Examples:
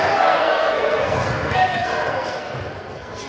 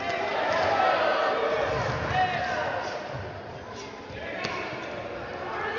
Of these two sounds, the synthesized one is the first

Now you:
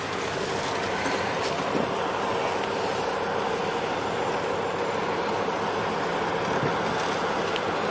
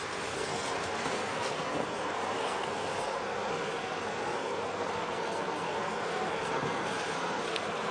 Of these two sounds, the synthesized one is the second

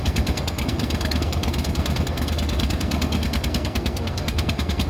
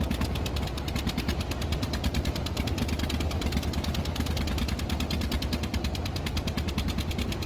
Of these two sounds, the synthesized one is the first